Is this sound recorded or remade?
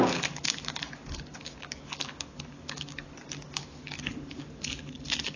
remade